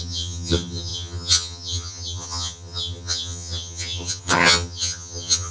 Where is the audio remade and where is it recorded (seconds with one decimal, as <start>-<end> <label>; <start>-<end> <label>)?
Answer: 0.0-5.5 remade